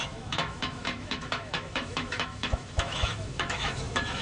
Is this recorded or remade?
remade